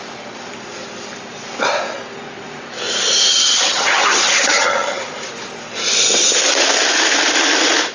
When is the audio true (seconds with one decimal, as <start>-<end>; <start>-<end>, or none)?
0.0-3.3; 5.0-7.9